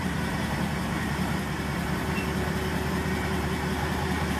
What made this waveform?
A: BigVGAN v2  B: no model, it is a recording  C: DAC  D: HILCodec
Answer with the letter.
A